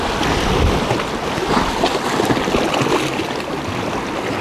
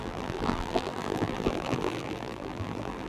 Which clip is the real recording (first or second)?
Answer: first